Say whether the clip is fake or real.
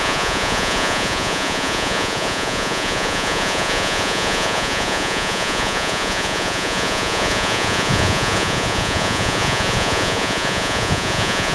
fake